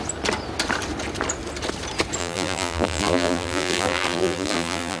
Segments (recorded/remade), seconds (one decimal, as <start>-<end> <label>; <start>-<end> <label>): 0.0-2.2 recorded; 2.2-5.0 remade